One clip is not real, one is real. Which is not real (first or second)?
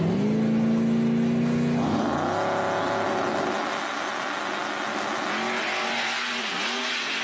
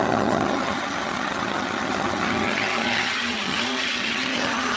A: second